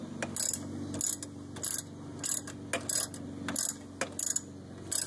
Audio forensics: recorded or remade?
recorded